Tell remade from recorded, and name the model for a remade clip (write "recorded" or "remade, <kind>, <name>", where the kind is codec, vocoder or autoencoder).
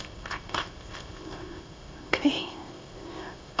remade, codec, ZipCodec